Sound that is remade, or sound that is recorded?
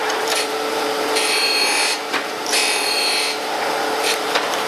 remade